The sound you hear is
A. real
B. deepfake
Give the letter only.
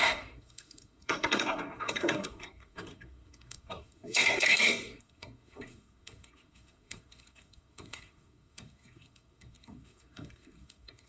B